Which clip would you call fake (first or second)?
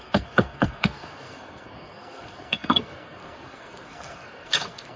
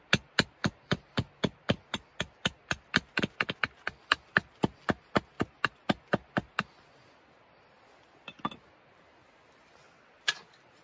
first